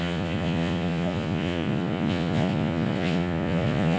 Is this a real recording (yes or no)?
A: no